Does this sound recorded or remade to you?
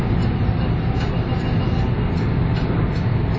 recorded